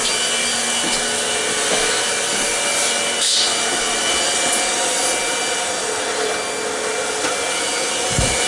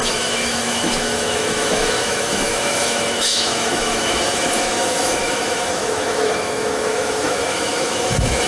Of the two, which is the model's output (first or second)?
second